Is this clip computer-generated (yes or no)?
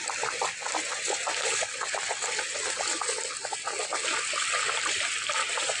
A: no